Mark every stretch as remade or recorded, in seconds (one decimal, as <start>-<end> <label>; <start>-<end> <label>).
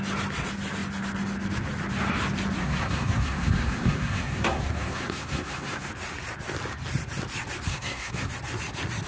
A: 0.0-2.6 recorded; 2.6-5.9 remade; 5.9-7.7 recorded; 7.7-8.3 remade; 8.3-9.1 recorded